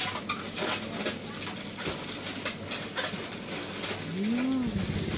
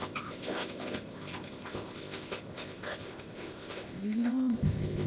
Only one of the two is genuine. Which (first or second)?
first